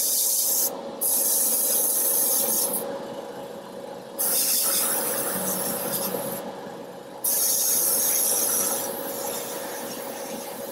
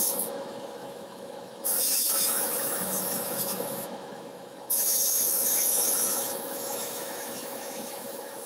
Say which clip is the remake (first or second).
second